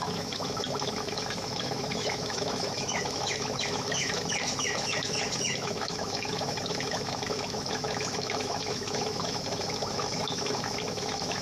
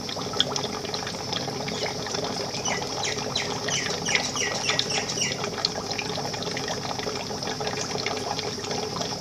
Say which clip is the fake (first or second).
first